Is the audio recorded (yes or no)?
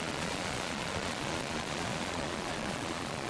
no